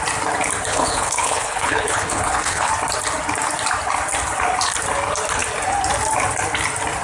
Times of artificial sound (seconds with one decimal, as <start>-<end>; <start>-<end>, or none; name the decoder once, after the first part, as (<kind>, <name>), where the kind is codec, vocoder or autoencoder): 0.7-2.7 (codec, HILCodec)